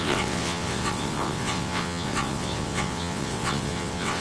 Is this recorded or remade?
remade